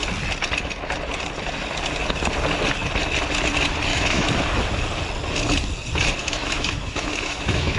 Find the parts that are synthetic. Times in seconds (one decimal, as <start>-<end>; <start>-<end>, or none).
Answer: 3.9-4.4; 6.2-7.8

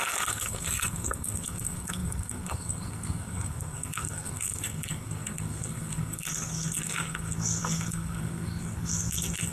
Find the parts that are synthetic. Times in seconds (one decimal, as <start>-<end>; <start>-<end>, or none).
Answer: 0.0-9.5